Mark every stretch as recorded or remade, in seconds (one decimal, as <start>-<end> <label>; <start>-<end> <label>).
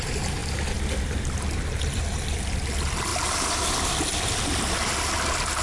0.0-5.6 recorded